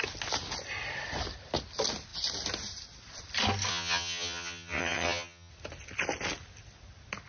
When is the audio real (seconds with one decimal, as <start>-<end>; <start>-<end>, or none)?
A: 0.0-3.7; 5.5-7.3